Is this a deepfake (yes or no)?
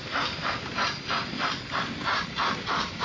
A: yes